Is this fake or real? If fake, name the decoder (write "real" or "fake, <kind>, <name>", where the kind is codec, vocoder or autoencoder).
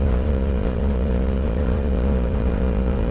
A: fake, vocoder, Vocos